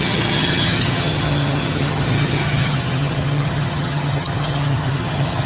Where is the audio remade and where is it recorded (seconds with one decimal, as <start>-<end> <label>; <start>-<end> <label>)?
0.0-5.5 remade